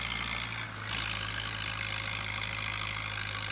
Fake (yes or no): no